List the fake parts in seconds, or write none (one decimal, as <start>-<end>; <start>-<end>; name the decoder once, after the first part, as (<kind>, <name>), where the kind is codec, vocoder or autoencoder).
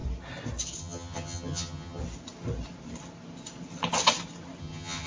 0.8-2.0 (vocoder, HiFi-GAN); 4.6-5.1